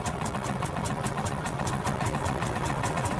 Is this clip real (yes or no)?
no